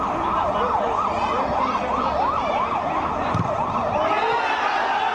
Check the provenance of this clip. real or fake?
real